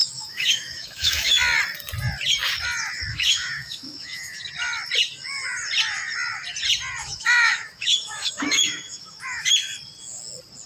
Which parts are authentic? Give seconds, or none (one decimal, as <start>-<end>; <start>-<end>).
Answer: 1.4-3.1; 4.4-7.0; 9.5-10.7